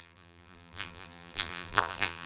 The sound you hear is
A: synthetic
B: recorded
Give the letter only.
A